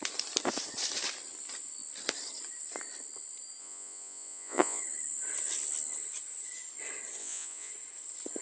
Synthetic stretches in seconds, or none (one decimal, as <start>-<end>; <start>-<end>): 3.6-4.8; 7.2-7.7